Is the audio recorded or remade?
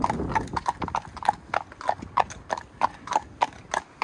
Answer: recorded